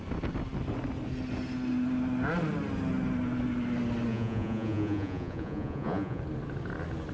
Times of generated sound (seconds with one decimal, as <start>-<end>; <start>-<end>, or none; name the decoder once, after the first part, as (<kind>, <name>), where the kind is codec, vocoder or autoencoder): 4.1-6.2 (vocoder, Vocos)